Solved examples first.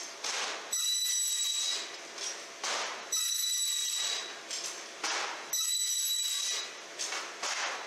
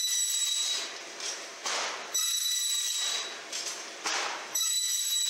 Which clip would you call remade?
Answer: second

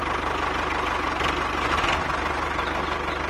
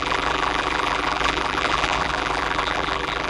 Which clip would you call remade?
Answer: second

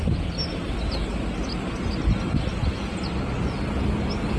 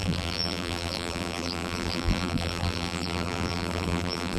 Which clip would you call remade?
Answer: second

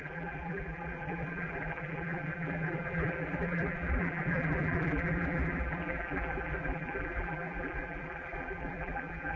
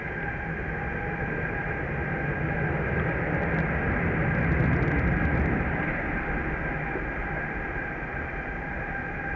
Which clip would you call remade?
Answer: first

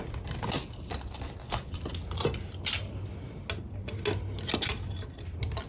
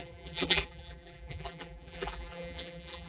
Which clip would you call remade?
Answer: second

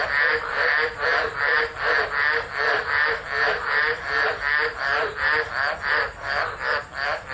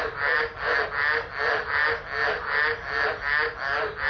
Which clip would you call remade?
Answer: first